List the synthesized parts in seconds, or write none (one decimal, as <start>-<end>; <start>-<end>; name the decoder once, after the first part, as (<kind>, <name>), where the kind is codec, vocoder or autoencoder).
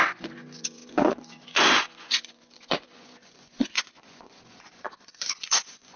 0.0-6.0 (vocoder, Vocos)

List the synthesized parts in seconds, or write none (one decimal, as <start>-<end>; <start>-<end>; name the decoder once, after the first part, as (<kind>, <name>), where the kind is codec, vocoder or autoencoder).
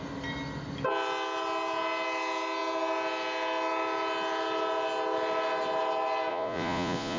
6.3-7.2 (vocoder, Vocos)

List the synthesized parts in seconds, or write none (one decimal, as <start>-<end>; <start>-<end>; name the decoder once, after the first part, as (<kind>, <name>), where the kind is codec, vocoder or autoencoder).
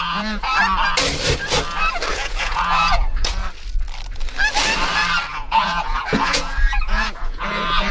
0.0-0.5 (vocoder, Vocos); 2.1-3.4; 5.3-7.9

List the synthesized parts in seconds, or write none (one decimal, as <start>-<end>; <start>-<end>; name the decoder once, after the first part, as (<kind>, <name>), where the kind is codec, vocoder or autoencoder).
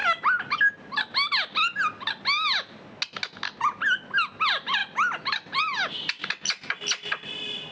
none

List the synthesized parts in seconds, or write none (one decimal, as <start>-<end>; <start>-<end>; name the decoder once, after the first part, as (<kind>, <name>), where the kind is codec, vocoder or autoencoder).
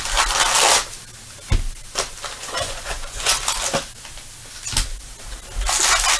2.4-3.4 (vocoder, Vocos)